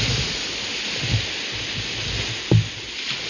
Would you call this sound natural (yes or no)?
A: yes